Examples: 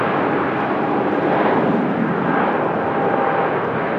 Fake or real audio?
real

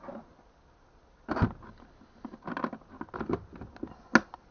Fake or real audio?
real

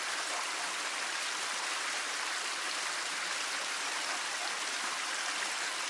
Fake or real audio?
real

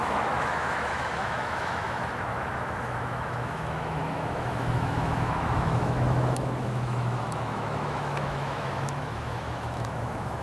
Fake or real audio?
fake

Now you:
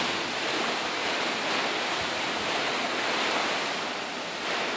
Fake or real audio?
real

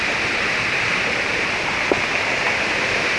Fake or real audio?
real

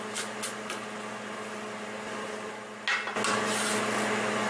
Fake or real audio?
real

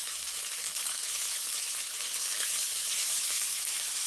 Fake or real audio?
fake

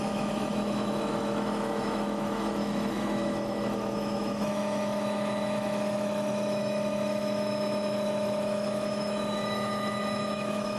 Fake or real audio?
fake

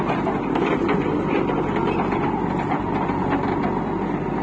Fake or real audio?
real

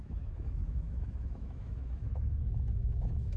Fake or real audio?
fake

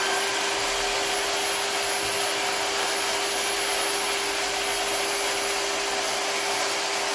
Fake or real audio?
real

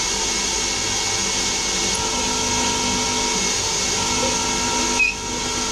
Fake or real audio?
real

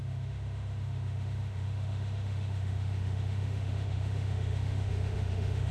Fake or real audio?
fake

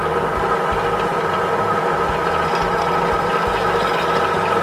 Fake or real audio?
real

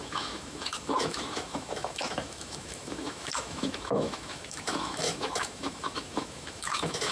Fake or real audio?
fake